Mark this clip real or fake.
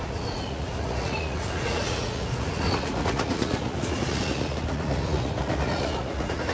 fake